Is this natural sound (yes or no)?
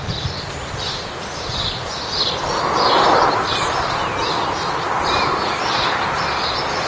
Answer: yes